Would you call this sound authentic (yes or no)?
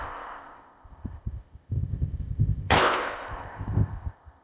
no